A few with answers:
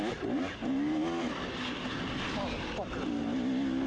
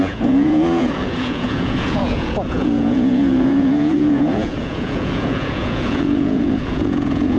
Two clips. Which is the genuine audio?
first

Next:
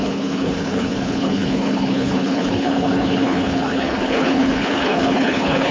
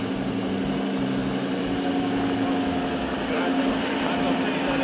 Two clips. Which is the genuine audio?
second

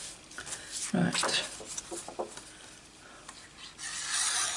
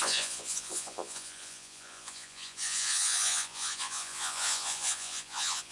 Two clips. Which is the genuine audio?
first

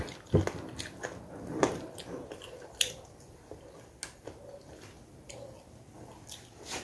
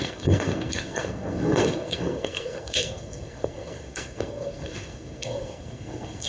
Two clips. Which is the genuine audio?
first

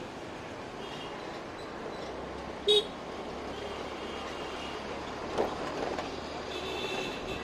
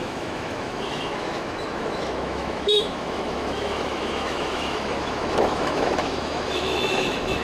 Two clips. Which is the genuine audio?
first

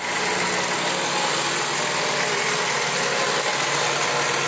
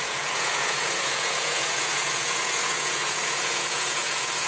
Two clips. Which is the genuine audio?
first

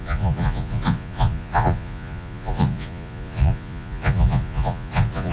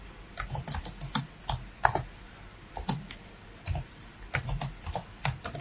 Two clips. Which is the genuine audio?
second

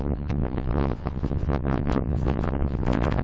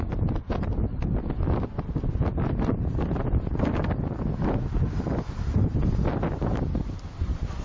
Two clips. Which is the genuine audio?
second